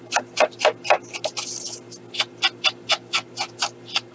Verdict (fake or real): real